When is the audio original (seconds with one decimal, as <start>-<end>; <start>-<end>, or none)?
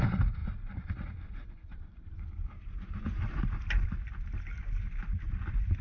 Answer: 0.0-0.4; 3.2-5.8